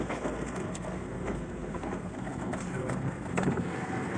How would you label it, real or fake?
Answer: fake